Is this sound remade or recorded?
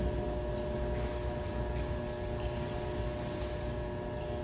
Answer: recorded